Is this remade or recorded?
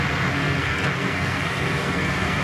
remade